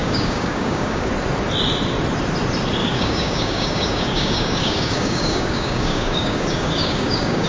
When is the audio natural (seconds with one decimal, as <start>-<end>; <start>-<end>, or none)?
1.1-2.8